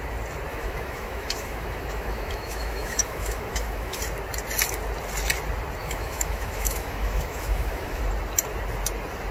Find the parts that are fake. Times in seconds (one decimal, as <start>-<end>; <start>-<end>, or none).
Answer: 0.5-4.0; 5.8-8.0